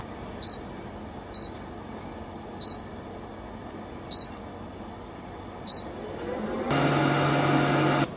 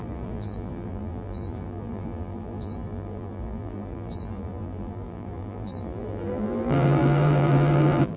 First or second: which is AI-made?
second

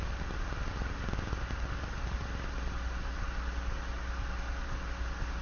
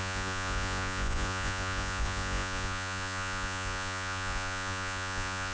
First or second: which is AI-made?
second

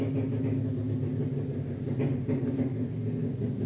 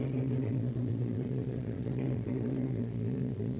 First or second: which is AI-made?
second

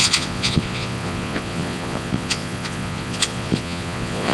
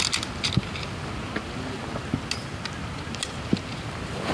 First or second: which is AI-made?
first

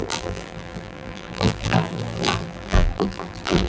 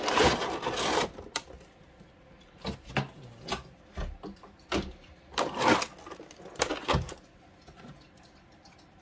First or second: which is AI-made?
first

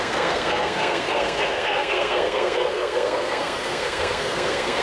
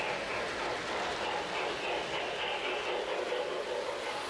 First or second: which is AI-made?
first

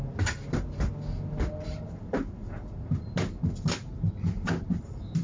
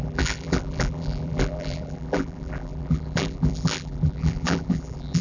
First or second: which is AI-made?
second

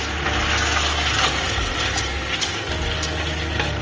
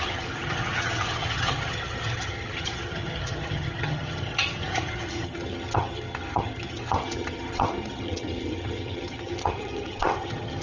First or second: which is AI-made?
second